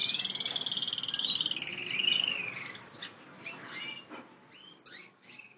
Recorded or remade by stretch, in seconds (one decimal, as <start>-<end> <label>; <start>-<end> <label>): 0.0-4.6 recorded; 4.6-5.6 remade